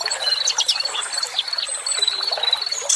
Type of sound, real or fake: real